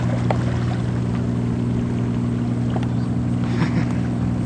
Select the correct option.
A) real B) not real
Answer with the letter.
A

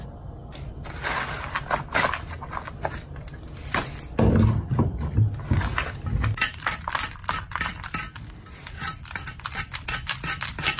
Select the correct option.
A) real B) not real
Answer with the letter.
A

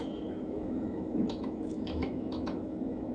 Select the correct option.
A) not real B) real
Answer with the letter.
A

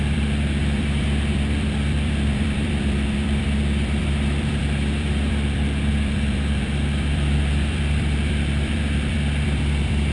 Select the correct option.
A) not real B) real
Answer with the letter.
A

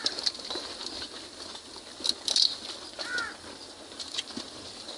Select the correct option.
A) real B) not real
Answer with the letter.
A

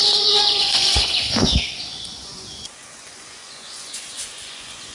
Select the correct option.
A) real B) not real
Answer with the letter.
B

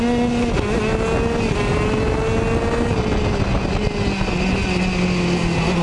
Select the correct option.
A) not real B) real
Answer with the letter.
B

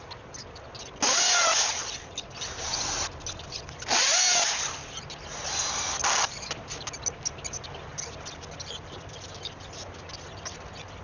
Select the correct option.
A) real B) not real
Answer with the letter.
A